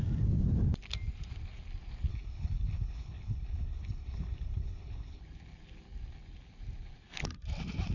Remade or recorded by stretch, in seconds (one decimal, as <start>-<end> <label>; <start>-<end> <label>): 0.0-2.1 recorded; 2.1-5.2 remade; 5.2-7.9 recorded